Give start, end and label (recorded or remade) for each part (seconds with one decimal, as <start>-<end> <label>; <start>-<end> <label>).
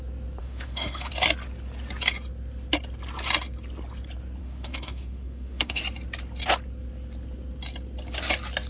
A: 0.0-0.4 recorded; 0.4-1.1 remade; 1.1-4.4 recorded; 4.4-5.8 remade; 5.8-8.7 recorded